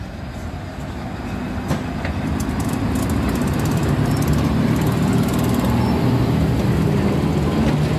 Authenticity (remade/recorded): recorded